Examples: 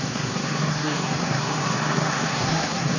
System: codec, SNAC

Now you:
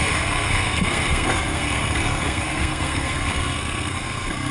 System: codec, SNAC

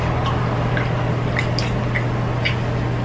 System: none